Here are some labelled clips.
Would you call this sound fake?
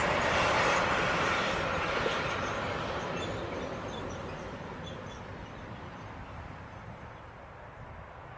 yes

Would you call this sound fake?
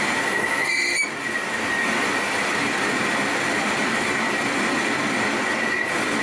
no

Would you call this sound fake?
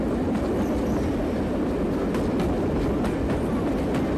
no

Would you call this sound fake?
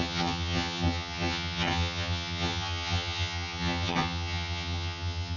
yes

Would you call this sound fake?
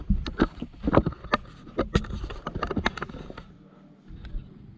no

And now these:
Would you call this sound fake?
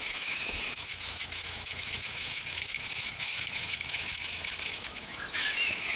yes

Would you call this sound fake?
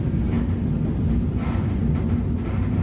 no